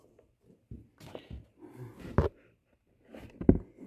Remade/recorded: recorded